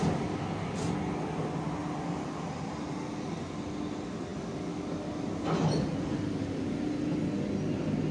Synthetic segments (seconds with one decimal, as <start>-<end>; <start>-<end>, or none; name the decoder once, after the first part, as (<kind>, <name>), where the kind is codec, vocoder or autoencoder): none

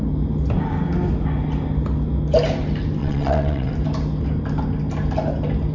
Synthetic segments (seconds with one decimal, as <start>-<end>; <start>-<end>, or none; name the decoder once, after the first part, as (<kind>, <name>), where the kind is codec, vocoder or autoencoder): 3.0-3.7 (vocoder, WaveNeXt)

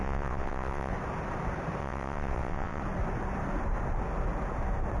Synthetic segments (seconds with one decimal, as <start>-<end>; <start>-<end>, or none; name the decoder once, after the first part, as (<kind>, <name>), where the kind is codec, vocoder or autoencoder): 0.0-0.9 (vocoder, WaveNeXt); 1.8-2.8